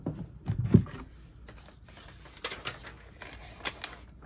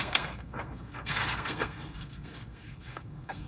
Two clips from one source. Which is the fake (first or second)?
second